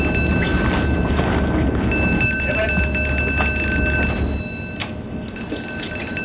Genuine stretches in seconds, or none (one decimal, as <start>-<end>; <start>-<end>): 0.0-6.2